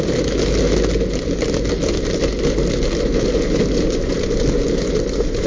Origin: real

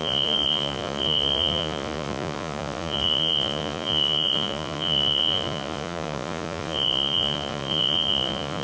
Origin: fake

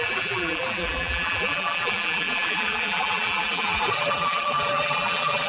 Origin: fake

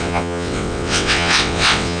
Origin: fake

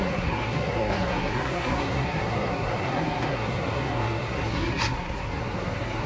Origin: fake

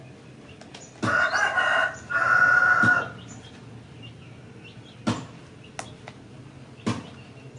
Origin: real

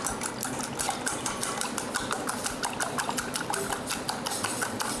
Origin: real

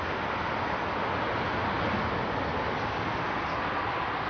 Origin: real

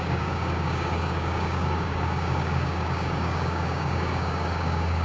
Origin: fake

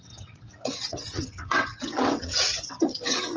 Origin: fake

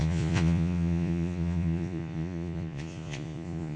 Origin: fake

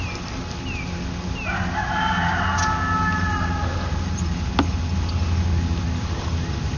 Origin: real